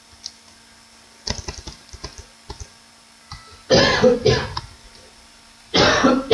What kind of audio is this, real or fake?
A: real